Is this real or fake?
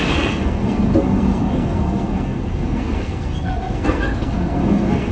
fake